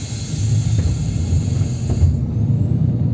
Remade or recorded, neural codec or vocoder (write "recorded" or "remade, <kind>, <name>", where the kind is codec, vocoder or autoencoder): recorded